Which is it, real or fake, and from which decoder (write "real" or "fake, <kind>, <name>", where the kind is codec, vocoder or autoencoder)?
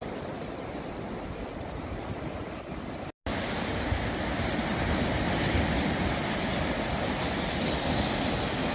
real